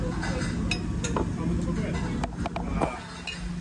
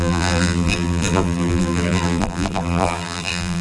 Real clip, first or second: first